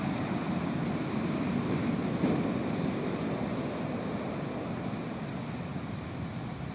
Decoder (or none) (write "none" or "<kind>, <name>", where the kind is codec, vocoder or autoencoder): none